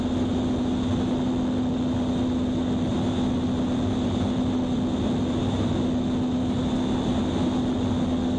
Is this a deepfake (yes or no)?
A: no